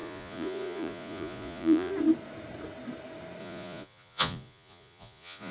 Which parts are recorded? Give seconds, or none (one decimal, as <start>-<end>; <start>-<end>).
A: 1.9-3.4